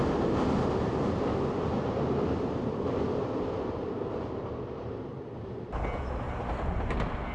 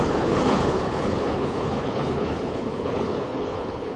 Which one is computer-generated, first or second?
second